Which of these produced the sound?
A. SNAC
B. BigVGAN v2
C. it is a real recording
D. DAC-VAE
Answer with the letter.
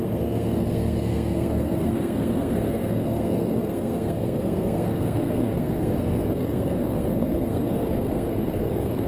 A